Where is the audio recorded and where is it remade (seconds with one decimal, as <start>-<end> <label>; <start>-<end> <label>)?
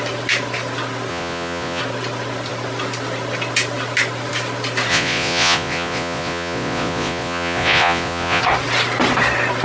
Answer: 0.0-1.1 recorded; 1.1-1.8 remade; 1.8-4.9 recorded; 4.9-8.4 remade; 8.4-9.6 recorded